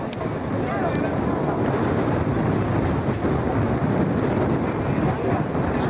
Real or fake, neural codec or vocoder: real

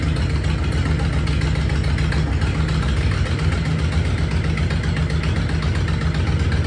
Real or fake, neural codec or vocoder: real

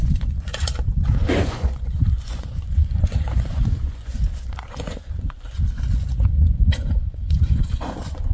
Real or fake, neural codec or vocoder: fake, vocoder, Vocos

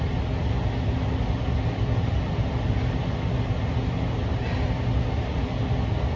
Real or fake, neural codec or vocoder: real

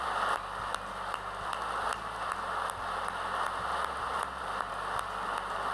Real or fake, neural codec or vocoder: real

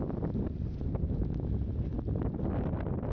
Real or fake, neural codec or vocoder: real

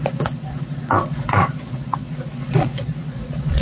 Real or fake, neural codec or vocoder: fake, vocoder, Vocos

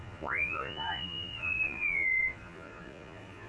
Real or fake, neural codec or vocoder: fake, vocoder, Vocos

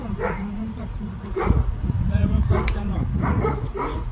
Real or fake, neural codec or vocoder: fake, vocoder, Vocos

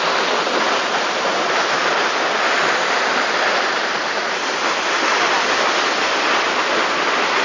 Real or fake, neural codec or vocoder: real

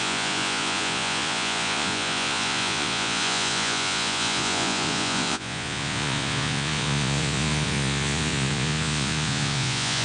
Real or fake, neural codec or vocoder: fake, vocoder, Vocos